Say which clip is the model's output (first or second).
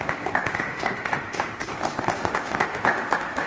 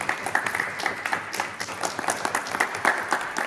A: first